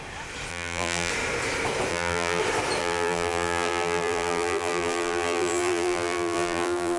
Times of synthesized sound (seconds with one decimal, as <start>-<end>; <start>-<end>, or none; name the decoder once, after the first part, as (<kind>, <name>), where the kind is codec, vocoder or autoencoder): 0.5-1.1 (vocoder, BigVGAN v2); 1.9-2.4; 2.8-7.0